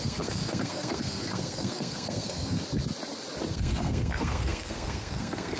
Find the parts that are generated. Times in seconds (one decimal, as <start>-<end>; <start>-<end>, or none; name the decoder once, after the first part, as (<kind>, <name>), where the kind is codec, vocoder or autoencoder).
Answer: 0.0-2.6 (codec, SNAC); 3.5-5.6